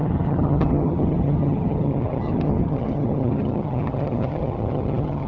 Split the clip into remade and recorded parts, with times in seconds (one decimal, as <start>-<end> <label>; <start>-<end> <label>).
0.0-5.3 remade